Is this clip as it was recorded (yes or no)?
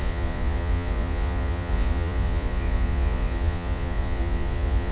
no